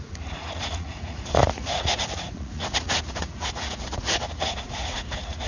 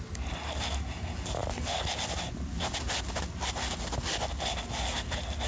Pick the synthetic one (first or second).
first